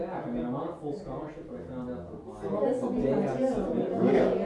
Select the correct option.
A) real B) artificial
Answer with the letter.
A